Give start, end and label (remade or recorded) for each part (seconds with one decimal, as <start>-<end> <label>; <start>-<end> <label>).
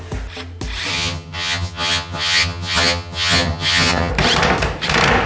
0.0-0.9 recorded; 0.9-4.1 remade; 4.1-5.3 recorded